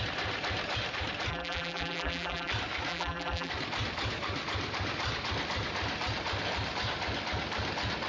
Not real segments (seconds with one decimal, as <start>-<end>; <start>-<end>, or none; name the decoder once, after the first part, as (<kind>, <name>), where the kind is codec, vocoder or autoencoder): 1.3-2.5 (vocoder, BigVGAN v2); 2.9-3.5